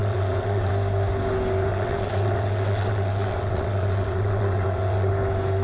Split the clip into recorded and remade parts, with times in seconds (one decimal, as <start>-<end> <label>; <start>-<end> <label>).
0.0-0.7 remade; 0.7-1.7 recorded; 1.7-5.1 remade; 5.1-5.6 recorded